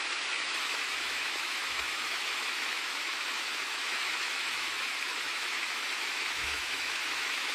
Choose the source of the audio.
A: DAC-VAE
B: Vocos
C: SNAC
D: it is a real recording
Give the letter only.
A